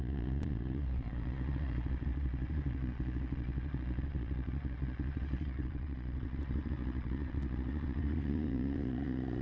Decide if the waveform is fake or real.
fake